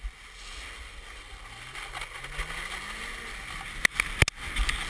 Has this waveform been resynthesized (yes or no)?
no